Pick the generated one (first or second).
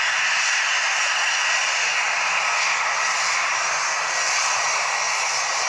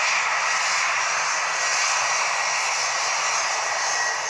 first